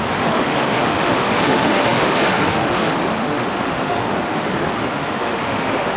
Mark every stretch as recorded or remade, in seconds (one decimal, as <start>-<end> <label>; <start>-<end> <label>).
0.0-6.0 remade